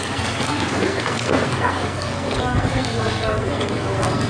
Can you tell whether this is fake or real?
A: fake